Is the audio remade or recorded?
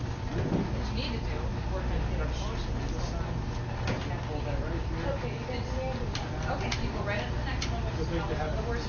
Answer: recorded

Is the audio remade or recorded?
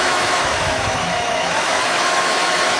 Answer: remade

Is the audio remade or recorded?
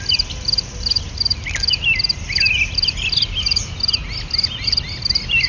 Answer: recorded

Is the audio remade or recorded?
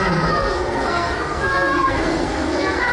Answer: remade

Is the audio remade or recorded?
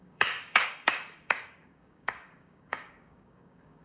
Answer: remade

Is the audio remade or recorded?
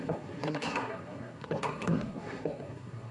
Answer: remade